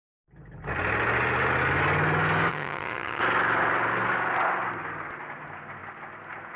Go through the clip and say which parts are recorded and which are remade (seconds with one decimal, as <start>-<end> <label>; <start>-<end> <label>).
0.0-2.5 recorded; 2.5-3.2 remade; 3.2-6.6 recorded

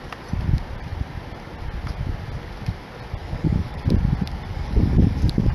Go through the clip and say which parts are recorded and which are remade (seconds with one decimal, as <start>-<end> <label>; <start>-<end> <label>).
0.0-3.2 recorded; 3.2-3.8 remade; 3.8-4.5 recorded; 4.5-5.5 remade

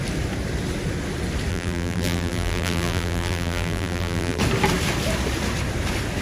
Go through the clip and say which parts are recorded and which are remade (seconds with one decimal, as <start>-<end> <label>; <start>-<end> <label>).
0.0-1.5 recorded; 1.5-4.4 remade; 4.4-6.2 recorded

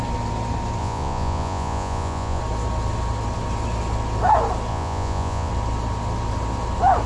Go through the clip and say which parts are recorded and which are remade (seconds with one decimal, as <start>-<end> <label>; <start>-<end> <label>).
0.0-0.8 recorded; 0.8-2.4 remade; 2.4-4.7 recorded; 4.7-5.5 remade; 5.5-7.1 recorded

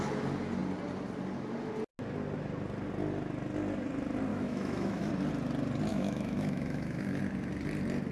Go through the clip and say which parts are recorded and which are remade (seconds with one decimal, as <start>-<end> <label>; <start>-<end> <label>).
0.0-4.3 recorded; 4.3-5.1 remade; 5.1-5.9 recorded; 5.9-7.2 remade; 7.2-8.1 recorded